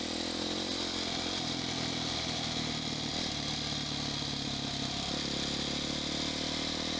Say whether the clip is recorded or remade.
recorded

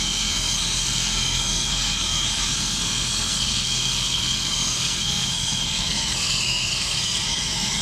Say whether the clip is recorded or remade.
remade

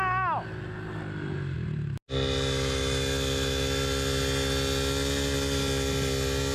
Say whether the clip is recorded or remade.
recorded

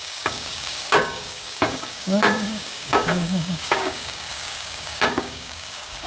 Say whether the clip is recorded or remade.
remade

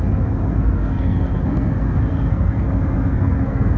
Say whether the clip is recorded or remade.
remade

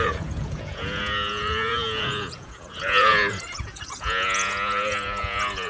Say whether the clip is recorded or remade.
remade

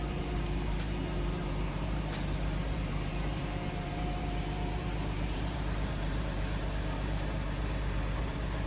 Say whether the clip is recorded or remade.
remade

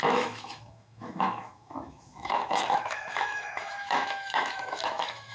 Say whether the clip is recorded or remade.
remade